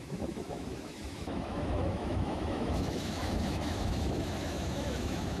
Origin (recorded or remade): remade